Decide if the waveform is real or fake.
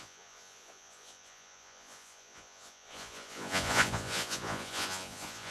fake